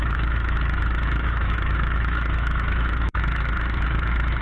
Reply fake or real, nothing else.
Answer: fake